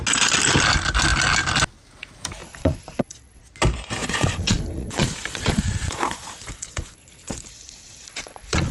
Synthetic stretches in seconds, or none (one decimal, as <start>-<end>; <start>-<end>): 2.4-3.4; 4.0-8.7